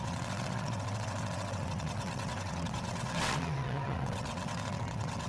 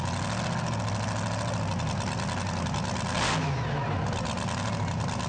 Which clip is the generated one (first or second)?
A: first